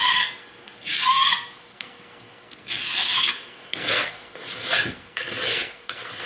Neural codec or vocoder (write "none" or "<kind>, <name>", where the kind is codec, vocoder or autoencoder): codec, SNAC